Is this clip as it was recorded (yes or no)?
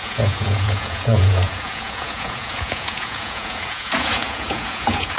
no